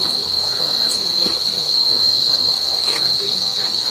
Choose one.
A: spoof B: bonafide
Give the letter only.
A